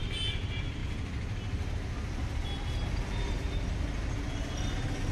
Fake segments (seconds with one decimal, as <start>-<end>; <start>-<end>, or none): none